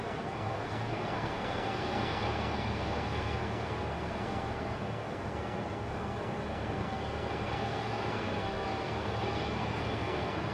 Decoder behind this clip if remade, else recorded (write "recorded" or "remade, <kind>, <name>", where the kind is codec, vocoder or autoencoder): remade, codec, SNAC